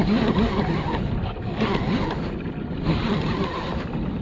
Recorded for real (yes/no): yes